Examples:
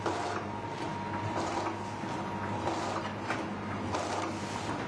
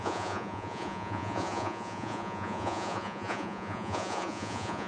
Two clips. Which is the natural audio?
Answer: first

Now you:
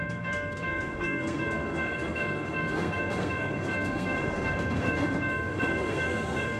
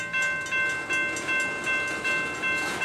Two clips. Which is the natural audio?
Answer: second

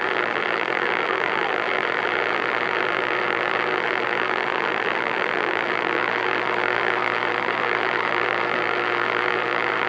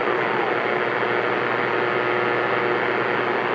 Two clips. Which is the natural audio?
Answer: second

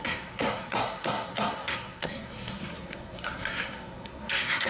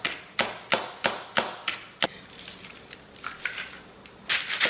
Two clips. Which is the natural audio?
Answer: second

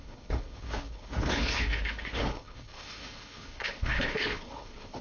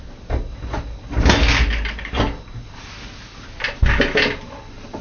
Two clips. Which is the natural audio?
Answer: second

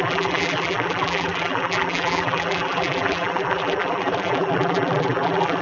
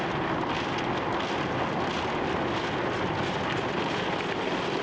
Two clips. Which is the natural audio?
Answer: second